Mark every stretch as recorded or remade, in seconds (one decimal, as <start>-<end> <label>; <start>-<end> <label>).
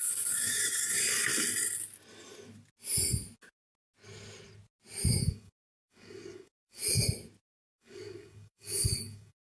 0.0-1.3 remade; 1.3-5.2 recorded; 5.2-6.8 remade; 6.8-7.4 recorded; 7.4-9.6 remade